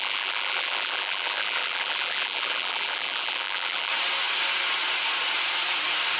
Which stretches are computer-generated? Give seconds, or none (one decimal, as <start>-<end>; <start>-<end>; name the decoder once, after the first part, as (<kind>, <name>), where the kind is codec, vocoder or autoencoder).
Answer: 0.0-3.9 (vocoder, BigVGAN v2)